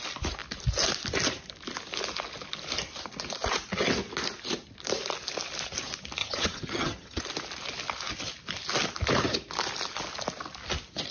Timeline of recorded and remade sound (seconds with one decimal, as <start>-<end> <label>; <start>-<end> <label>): 0.0-6.2 recorded; 6.2-7.2 remade; 7.2-11.1 recorded